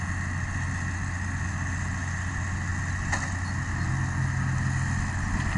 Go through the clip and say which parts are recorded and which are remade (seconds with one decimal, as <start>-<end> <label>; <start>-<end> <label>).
0.0-5.6 recorded